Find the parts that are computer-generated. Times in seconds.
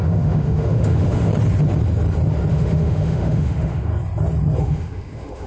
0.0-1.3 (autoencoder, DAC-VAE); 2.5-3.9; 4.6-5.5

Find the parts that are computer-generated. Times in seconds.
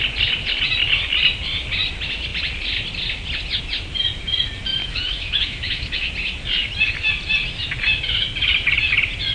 4.8-6.1 (autoencoder, DAC-VAE)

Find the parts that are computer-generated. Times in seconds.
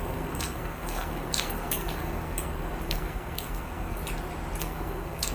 0.0-4.0 (codec, SNAC); 4.6-5.3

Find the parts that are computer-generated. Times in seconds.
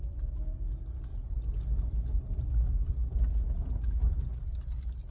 none